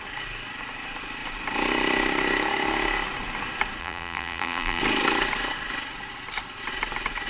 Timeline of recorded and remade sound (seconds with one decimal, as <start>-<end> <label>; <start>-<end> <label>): 0.0-3.8 recorded; 3.8-4.8 remade; 4.8-7.3 recorded